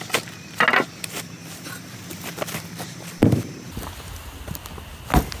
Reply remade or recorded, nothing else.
recorded